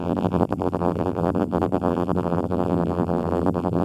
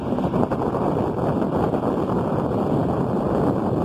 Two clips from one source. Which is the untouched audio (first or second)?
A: second